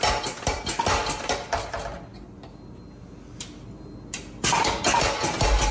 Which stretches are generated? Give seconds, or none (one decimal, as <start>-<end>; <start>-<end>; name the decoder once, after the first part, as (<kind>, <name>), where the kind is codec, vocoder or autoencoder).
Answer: none